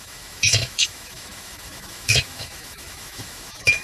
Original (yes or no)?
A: no